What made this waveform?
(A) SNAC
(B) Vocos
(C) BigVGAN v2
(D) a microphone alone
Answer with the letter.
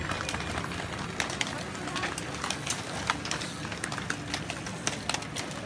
D